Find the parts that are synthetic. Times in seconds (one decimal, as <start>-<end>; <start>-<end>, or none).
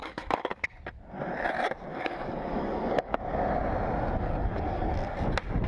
0.0-0.6; 1.9-3.2